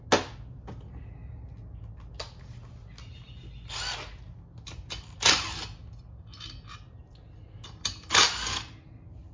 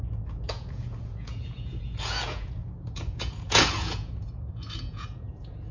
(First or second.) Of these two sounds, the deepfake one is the second